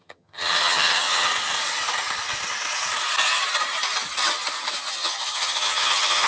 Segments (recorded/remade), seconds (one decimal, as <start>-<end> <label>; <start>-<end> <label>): 0.0-1.3 remade; 1.3-4.9 recorded; 4.9-6.3 remade